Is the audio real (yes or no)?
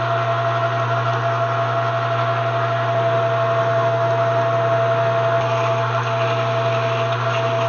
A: yes